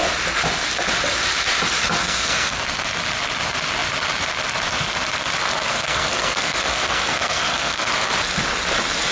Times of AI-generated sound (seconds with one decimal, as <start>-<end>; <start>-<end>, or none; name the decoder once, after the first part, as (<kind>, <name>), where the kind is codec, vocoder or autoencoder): 2.0-2.6 (codec, SNAC); 5.7-7.9